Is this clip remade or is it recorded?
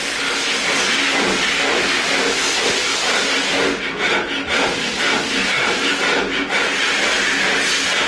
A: recorded